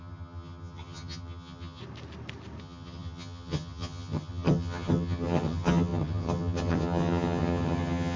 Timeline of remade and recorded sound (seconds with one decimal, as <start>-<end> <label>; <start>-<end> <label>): 0.0-1.8 remade; 1.8-2.6 recorded; 2.6-8.2 remade